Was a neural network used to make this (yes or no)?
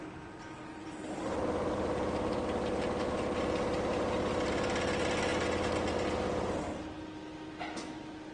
no